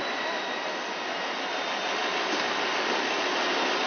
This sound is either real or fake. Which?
real